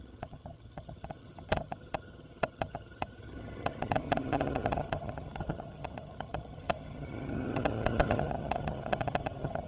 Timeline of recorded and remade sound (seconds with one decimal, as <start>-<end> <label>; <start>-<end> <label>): 0.0-9.7 remade